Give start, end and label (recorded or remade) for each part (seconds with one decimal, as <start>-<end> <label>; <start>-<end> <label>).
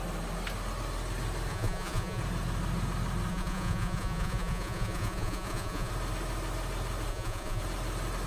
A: 0.0-1.5 recorded; 1.5-2.2 remade; 2.2-3.3 recorded; 3.3-5.9 remade; 5.9-7.1 recorded; 7.1-7.6 remade; 7.6-8.3 recorded